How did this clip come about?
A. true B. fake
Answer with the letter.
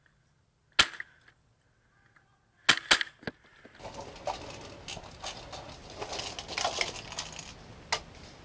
A